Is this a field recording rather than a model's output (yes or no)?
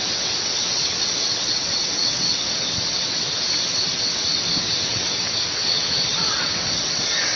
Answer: no